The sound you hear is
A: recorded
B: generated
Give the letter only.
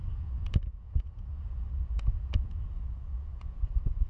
B